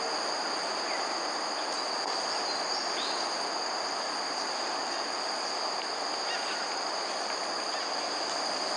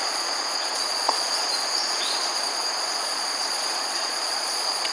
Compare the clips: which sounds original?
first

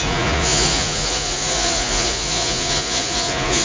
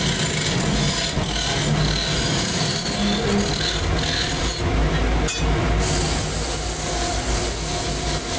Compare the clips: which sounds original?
second